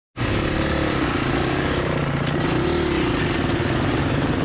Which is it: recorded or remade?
recorded